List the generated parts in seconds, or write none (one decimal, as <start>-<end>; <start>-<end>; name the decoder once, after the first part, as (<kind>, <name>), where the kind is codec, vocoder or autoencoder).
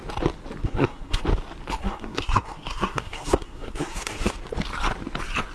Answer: 0.6-1.2 (codec, SNAC); 1.8-4.3